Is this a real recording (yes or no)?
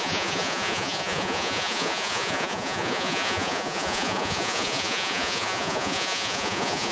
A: no